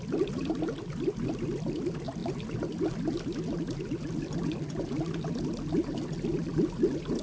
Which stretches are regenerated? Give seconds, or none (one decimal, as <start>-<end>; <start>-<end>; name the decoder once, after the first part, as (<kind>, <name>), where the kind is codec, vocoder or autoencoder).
none